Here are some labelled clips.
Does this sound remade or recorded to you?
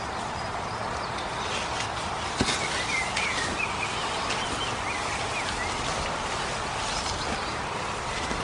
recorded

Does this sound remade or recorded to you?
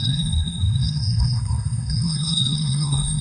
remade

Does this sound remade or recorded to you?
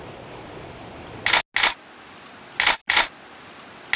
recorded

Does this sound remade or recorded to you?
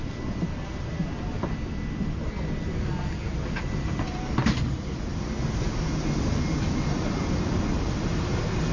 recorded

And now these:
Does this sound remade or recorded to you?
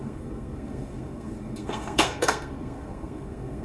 remade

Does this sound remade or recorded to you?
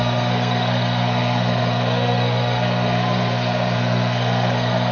remade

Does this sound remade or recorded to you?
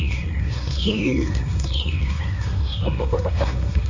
remade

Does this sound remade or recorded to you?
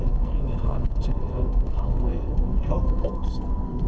remade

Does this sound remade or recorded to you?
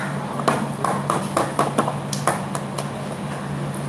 recorded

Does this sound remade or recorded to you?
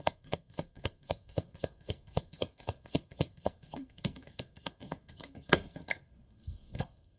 remade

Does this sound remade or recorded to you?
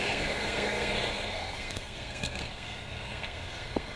remade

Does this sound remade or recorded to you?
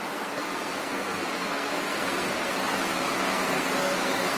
remade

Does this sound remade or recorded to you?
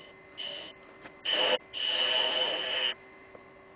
recorded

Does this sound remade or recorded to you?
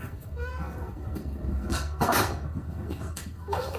remade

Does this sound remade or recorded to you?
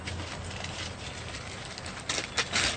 recorded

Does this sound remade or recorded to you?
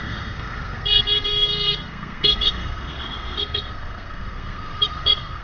remade